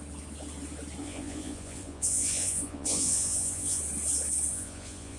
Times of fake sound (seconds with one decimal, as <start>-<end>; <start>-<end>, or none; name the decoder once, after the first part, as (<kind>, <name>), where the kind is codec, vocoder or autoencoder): 1.0-3.8 (vocoder, Vocos); 4.5-5.2